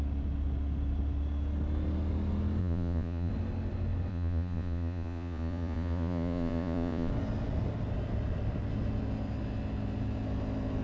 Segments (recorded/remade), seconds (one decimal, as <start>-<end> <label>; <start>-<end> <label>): 0.0-2.6 recorded; 2.6-3.3 remade; 3.3-4.1 recorded; 4.1-7.1 remade; 7.1-10.8 recorded